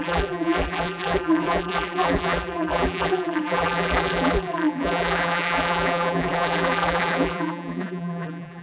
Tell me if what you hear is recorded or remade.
remade